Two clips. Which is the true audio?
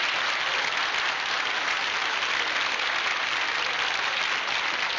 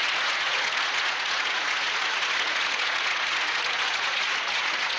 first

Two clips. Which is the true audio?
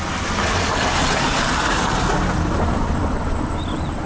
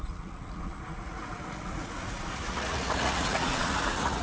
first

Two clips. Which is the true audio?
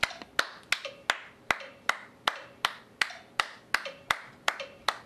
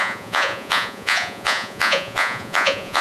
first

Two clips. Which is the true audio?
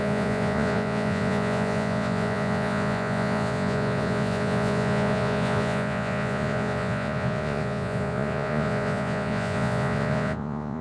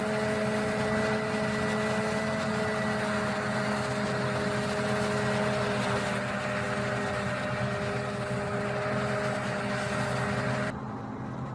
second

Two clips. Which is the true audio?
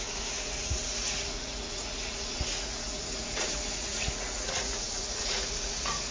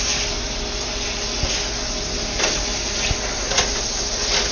second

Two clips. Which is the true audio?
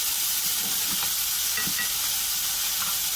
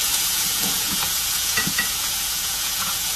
first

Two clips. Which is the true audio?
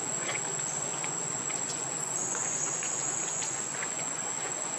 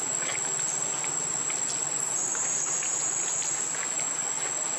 second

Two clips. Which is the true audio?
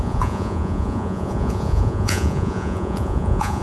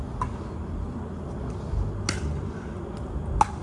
second